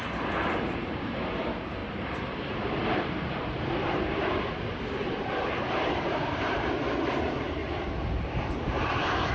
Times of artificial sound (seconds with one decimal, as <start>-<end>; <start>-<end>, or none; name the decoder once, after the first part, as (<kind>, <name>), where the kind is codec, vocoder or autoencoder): 0.0-7.6 (vocoder, BigVGAN v2); 8.2-9.3